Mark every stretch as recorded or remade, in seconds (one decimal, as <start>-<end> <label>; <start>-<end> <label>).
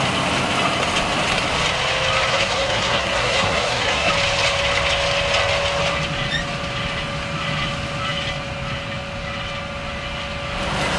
0.0-2.3 recorded; 2.3-4.1 remade; 4.1-11.0 recorded